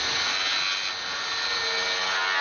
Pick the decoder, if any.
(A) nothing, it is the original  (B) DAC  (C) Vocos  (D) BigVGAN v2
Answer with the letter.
A